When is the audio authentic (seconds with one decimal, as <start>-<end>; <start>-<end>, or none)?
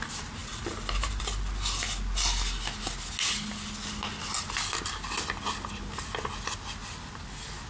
0.0-0.4; 1.2-7.7